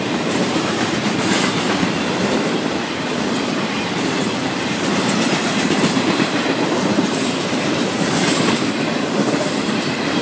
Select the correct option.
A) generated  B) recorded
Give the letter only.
A